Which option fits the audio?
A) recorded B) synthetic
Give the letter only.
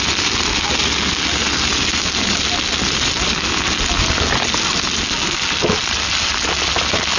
A